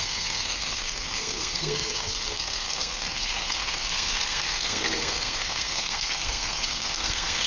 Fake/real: fake